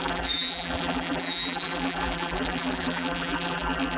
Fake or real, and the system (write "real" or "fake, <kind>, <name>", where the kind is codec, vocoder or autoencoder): fake, vocoder, BigVGAN v2